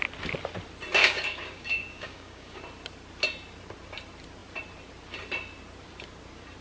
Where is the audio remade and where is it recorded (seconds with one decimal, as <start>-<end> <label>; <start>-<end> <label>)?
0.0-1.0 recorded; 1.0-2.6 remade; 2.6-6.6 recorded